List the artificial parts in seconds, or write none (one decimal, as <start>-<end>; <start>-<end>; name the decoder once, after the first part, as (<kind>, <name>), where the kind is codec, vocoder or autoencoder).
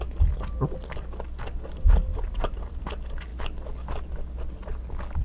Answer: 2.1-2.6 (vocoder, BigVGAN v2)